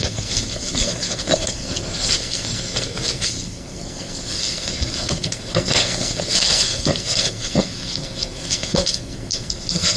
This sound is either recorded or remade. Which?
remade